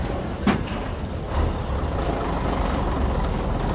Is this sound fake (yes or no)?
no